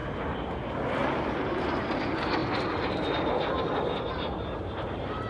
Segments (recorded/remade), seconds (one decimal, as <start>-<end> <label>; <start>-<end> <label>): 0.0-0.6 recorded; 0.6-2.4 remade; 2.4-4.1 recorded; 4.1-5.3 remade